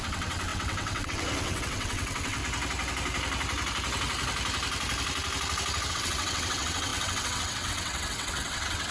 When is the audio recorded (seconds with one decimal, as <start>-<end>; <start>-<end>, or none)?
2.4-5.9